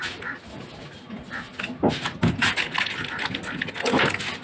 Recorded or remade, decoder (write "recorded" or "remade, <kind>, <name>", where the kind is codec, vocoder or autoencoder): recorded